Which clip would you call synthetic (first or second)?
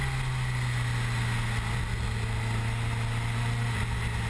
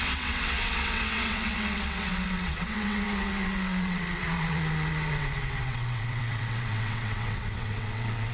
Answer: second